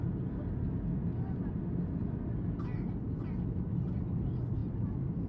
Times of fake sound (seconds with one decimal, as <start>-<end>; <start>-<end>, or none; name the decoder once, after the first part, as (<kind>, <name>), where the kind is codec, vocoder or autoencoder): none